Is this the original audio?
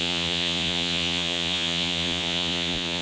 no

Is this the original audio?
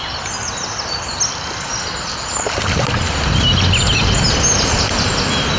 yes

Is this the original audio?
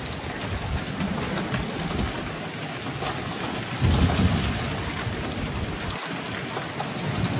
yes